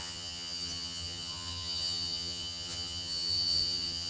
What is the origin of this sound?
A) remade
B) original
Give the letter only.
A